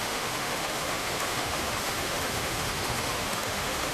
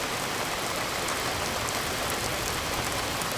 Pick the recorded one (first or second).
second